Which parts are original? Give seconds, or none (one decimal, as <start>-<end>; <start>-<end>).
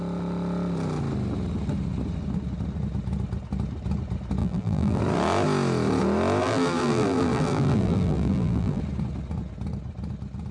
0.0-4.4; 5.0-6.4; 8.8-10.5